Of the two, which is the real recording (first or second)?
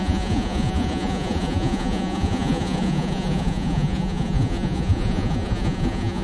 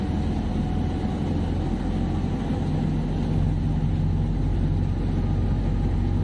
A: second